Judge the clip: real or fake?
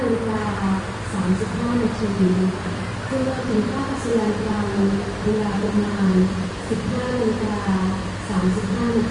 fake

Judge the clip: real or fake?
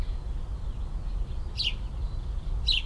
real